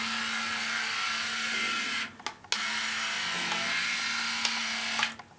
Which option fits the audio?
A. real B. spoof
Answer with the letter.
A